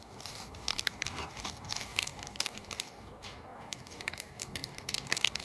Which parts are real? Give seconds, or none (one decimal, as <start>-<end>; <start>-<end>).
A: none